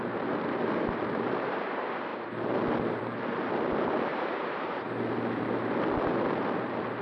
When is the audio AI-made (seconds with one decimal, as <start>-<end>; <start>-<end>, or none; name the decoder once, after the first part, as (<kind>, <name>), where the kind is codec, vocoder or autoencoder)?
4.1-4.9 (vocoder, BigVGAN v2)